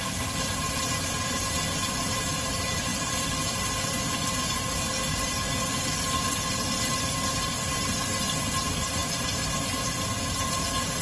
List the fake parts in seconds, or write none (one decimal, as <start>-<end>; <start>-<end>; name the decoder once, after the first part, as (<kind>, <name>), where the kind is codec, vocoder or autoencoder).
none